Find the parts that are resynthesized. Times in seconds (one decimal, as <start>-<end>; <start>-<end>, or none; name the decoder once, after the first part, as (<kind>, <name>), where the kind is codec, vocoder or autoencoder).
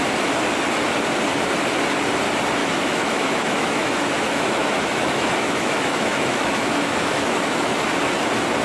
2.6-7.8 (autoencoder, DAC-VAE)